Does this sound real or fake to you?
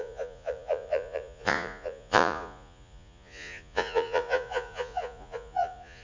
fake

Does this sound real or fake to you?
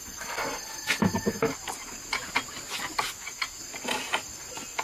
real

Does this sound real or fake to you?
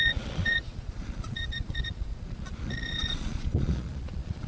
fake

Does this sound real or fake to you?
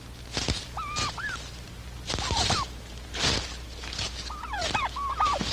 real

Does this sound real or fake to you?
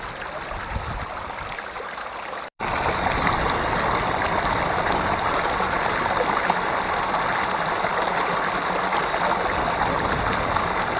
real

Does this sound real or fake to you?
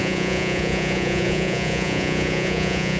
fake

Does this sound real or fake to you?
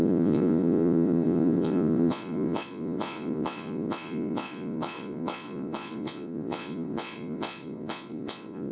fake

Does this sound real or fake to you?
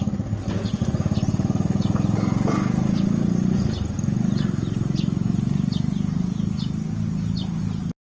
real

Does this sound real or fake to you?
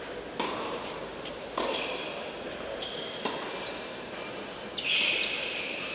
real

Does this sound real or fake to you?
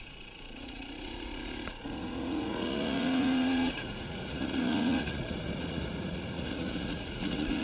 fake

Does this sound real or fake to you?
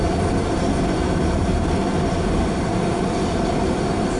real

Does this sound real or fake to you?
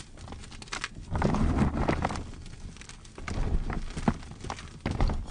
real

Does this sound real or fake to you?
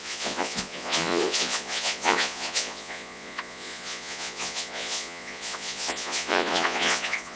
fake